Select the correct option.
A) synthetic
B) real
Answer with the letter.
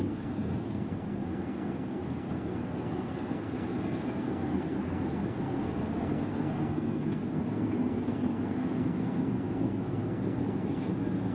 A